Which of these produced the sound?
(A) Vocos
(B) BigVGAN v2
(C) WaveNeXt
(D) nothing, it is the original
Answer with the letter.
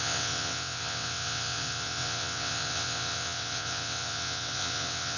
C